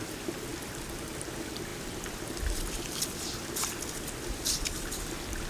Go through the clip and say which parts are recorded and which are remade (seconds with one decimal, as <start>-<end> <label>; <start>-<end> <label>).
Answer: 0.0-5.5 recorded